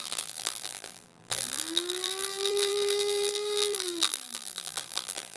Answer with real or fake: fake